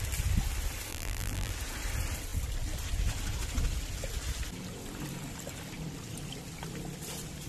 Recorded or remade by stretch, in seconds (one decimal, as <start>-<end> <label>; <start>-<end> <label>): 0.0-0.9 recorded; 0.9-1.5 remade; 1.5-7.5 recorded